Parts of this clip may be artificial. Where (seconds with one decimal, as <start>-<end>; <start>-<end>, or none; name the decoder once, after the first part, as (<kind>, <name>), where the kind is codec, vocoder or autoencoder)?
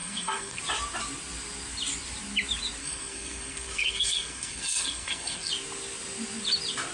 0.0-0.6 (codec, SNAC); 2.8-5.5